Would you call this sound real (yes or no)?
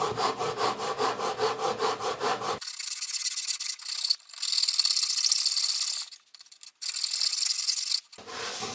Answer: yes